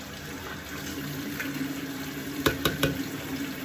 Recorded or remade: recorded